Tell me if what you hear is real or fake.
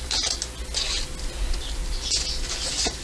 real